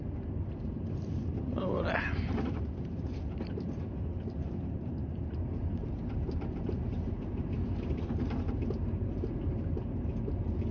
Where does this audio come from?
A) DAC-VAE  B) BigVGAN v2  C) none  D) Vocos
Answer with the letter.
B